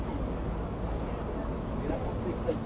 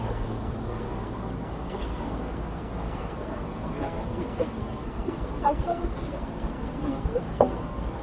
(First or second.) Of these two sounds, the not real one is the second